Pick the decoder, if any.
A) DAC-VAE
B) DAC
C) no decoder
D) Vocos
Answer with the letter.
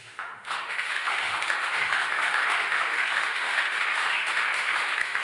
A